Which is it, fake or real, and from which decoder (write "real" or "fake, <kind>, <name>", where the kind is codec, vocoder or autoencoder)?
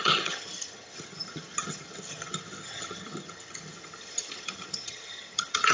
fake, vocoder, HiFi-GAN